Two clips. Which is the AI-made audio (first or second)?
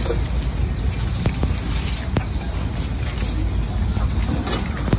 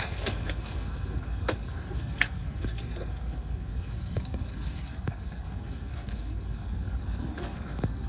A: second